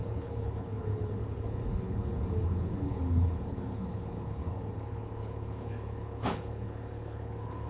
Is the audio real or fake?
fake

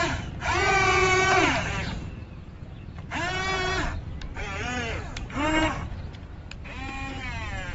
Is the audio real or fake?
real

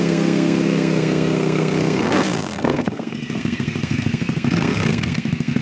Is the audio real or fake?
fake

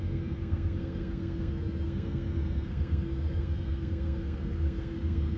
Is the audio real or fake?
fake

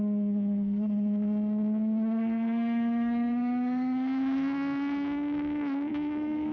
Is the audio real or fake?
fake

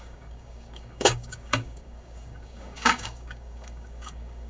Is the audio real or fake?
fake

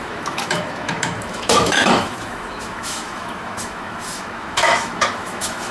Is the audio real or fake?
fake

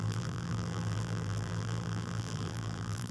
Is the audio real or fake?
fake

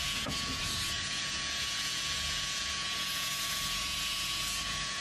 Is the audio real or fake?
fake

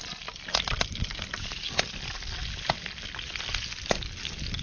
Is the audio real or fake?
real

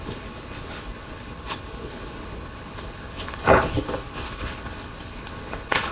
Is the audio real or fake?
fake